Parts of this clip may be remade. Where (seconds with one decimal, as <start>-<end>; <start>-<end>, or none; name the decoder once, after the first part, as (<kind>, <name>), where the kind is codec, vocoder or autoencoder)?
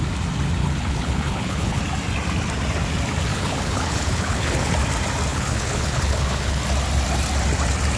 0.6-1.8 (codec, HILCodec); 3.3-4.7; 5.3-6.6